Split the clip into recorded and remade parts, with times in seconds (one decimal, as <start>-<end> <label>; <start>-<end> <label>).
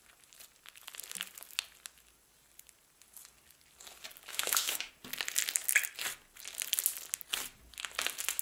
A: 0.0-4.3 recorded; 4.3-4.9 remade; 4.9-8.4 recorded